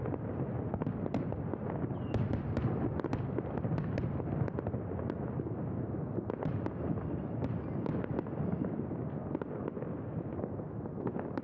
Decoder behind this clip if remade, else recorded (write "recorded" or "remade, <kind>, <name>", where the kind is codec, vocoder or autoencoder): recorded